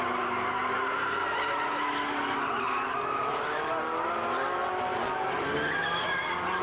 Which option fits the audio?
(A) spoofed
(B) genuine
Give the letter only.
B